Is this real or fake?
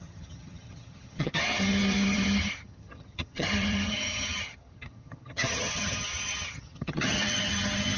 fake